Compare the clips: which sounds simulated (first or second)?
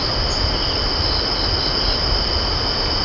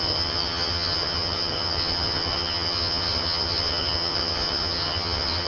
second